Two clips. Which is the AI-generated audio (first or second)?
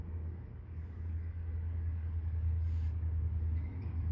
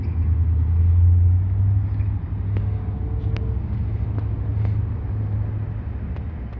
first